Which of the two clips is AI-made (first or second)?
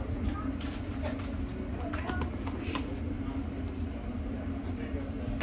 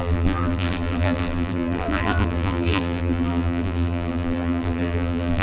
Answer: second